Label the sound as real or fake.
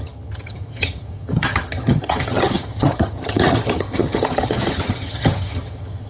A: fake